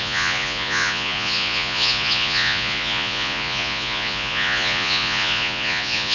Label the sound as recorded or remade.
remade